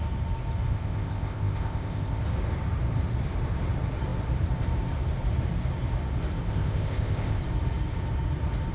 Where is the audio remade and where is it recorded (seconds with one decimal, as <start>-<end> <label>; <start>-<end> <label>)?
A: 0.0-0.7 recorded; 0.7-2.2 remade; 2.2-6.5 recorded; 6.5-7.4 remade; 7.4-8.7 recorded